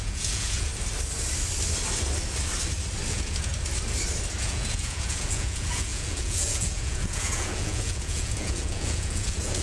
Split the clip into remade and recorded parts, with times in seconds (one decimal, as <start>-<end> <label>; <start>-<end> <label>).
0.0-0.7 remade; 0.7-3.1 recorded; 3.1-3.5 remade; 3.5-4.4 recorded; 4.4-9.6 remade